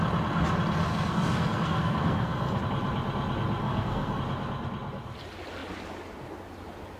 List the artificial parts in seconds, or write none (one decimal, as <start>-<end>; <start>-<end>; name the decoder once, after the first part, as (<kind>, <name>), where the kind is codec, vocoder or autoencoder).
0.9-2.6 (codec, SNAC); 3.6-4.2